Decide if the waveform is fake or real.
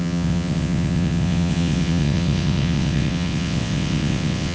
fake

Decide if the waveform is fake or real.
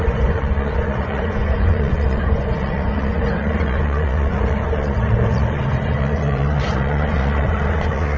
fake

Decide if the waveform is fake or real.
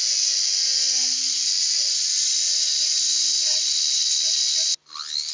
real